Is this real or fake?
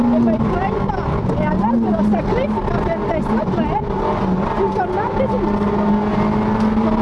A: real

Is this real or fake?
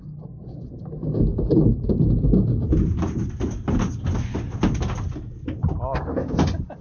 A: real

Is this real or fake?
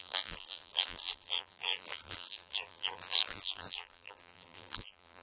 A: fake